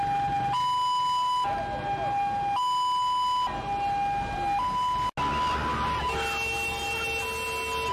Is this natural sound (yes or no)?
yes